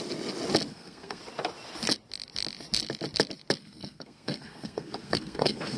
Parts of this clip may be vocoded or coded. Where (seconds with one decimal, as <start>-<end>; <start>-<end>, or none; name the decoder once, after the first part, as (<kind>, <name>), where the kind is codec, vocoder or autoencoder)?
0.7-1.2 (codec, SNAC); 3.6-5.8